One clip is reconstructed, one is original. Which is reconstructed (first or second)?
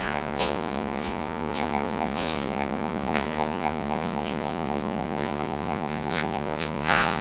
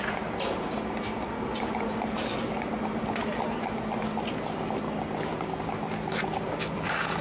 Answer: first